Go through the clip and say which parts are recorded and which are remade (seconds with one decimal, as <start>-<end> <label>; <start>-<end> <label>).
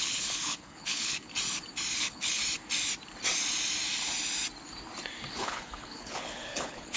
0.0-1.3 remade; 1.3-2.0 recorded; 2.0-2.4 remade; 2.4-5.3 recorded; 5.3-7.0 remade